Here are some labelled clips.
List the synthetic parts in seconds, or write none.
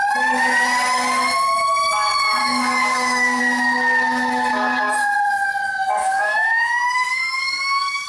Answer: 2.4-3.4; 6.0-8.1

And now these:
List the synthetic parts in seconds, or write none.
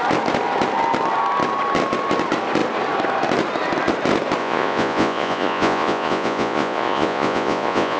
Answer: 4.4-8.0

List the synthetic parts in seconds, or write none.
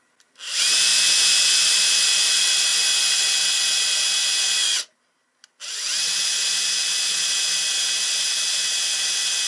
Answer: none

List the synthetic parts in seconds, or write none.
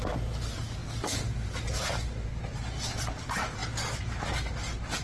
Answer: none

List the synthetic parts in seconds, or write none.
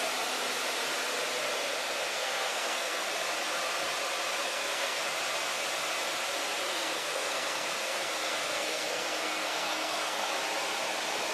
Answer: 2.1-3.1; 4.4-5.0; 6.7-10.4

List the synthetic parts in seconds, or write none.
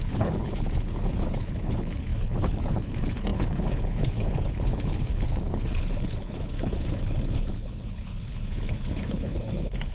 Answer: 0.0-9.9